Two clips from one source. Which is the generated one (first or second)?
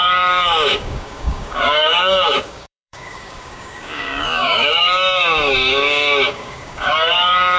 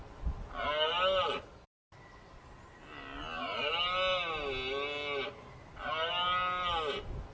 first